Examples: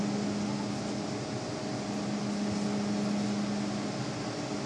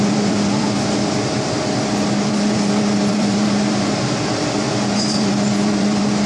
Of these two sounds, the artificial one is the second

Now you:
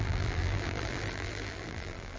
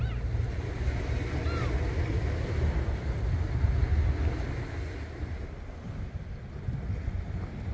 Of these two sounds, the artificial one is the first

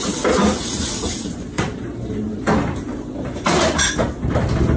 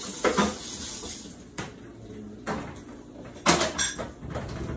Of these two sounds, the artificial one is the first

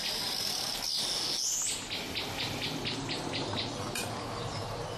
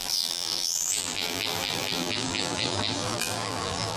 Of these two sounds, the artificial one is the second